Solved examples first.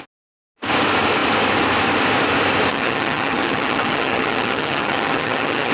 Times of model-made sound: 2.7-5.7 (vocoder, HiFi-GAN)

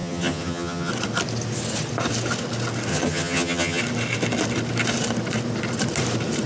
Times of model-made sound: 0.0-0.9 (vocoder, HiFi-GAN); 2.9-3.8